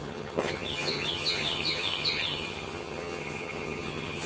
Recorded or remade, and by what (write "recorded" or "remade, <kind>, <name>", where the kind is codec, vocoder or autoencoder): remade, vocoder, HiFi-GAN